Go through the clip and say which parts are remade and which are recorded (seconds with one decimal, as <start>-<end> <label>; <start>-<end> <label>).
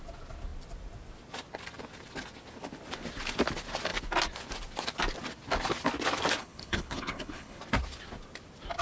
0.0-6.4 recorded; 6.4-7.6 remade; 7.6-8.8 recorded